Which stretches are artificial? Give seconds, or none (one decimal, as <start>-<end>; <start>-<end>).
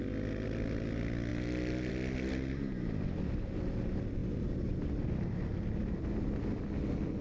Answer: none